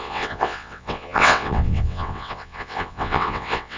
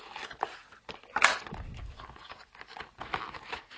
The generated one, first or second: first